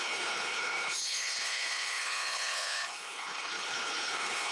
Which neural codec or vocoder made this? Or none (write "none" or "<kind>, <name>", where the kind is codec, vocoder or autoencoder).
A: codec, HILCodec